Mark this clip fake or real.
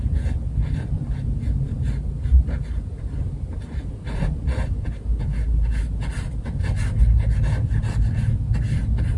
real